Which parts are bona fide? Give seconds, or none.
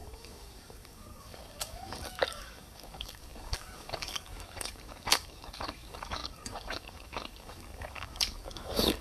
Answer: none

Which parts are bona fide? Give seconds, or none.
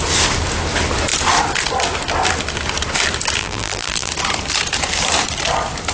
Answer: 0.0-3.4; 4.1-5.9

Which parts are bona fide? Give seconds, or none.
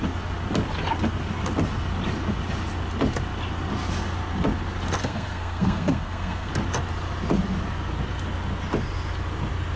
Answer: 0.0-5.0; 6.5-9.8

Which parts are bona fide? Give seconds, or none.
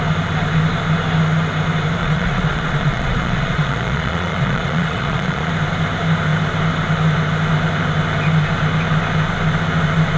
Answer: 0.0-2.0; 5.5-10.2